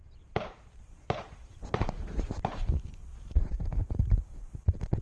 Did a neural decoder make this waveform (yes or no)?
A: yes